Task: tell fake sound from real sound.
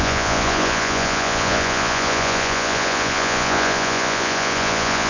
fake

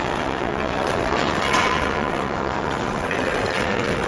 fake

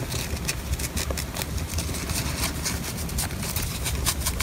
real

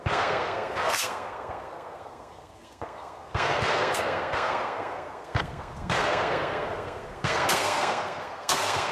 fake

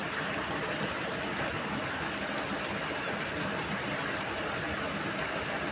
real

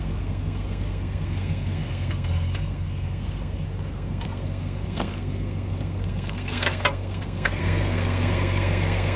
fake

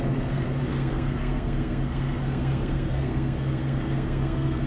fake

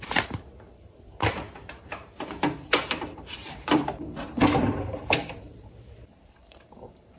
fake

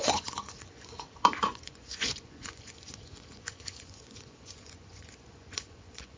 fake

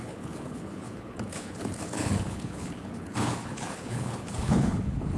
fake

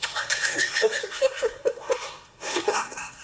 fake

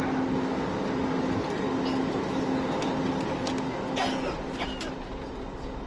real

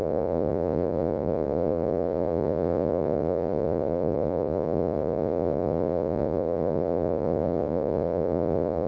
fake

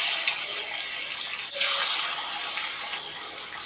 real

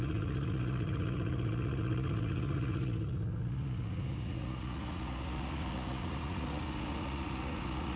fake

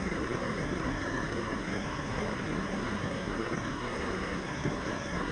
fake